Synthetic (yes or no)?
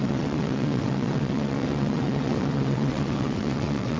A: yes